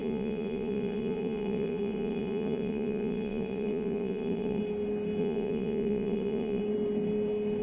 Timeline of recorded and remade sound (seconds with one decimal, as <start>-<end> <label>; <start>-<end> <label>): 0.0-4.6 remade; 4.6-5.2 recorded; 5.2-6.6 remade; 6.6-7.6 recorded